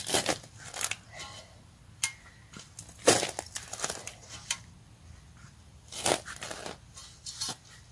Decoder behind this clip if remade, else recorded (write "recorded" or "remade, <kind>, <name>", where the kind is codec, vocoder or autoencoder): recorded